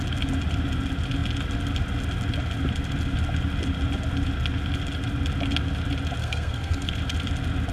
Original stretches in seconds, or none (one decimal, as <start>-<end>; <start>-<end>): 0.0-6.2; 6.9-7.7